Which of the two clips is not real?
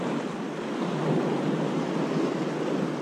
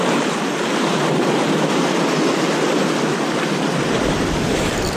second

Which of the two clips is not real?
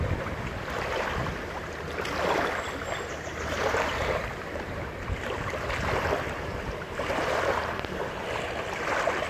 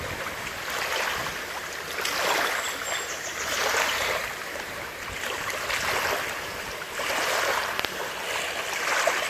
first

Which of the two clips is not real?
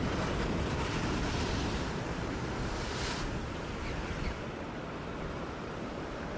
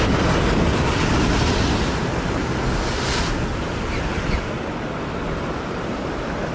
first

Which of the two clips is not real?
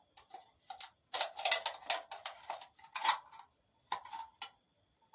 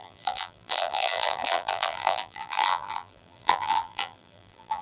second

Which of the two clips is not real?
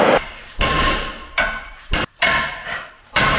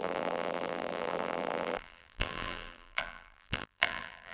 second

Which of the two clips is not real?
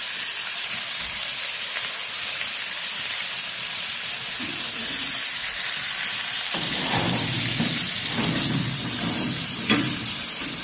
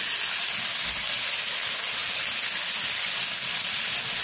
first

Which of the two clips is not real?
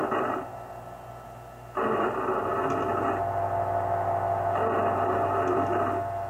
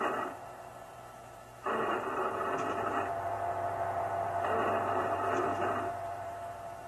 second